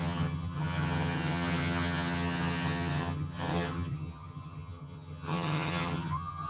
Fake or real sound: fake